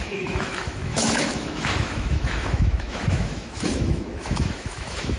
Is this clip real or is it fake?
fake